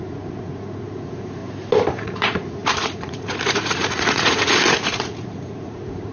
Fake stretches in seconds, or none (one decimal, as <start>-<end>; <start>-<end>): 0.0-1.4; 2.0-6.1